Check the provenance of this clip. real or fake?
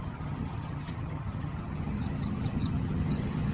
fake